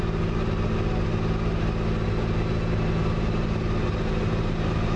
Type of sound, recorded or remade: recorded